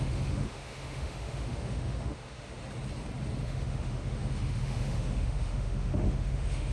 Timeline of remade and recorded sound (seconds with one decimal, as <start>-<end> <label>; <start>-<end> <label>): 0.0-2.6 remade; 2.6-3.4 recorded; 3.4-6.7 remade